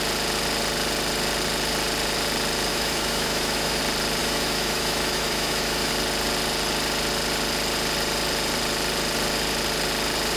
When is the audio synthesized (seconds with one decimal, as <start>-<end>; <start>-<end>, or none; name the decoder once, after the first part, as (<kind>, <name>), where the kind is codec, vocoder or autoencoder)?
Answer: 2.7-3.8 (autoencoder, DAC-VAE); 4.2-5.9